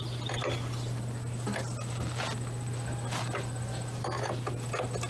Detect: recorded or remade recorded